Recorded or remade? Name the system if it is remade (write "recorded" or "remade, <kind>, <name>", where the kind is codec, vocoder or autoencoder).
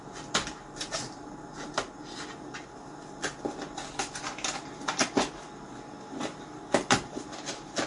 recorded